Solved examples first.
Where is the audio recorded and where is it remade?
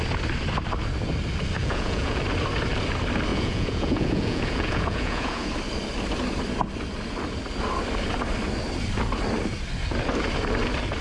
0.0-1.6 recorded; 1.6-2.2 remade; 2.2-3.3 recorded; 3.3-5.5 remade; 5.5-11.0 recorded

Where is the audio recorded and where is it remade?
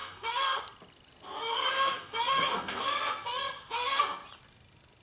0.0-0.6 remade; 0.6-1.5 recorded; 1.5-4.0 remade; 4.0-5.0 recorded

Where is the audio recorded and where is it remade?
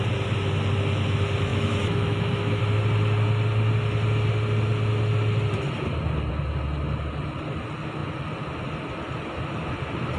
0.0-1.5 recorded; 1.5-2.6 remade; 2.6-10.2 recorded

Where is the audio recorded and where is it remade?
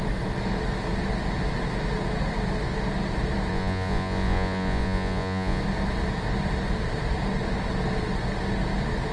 0.0-3.5 recorded; 3.5-5.6 remade; 5.6-9.1 recorded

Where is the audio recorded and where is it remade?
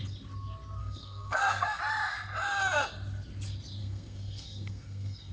0.0-0.8 recorded; 0.8-1.8 remade; 1.8-3.8 recorded; 3.8-5.3 remade